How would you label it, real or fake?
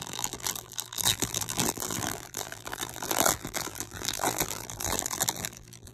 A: fake